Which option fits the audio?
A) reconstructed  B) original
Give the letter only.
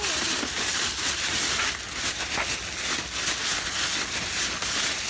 B